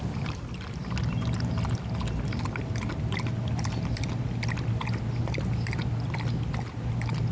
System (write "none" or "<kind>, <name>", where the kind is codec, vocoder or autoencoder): none